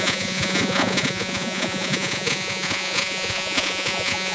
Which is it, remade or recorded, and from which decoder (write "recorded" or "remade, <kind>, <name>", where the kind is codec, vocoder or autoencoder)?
remade, vocoder, Vocos